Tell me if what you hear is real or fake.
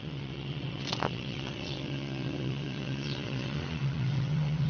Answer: fake